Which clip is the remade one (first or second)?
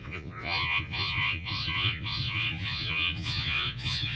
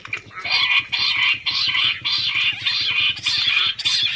first